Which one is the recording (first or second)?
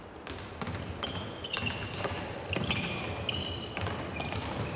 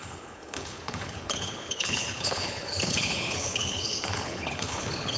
first